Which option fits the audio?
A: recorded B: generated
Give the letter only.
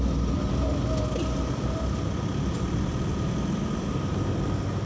A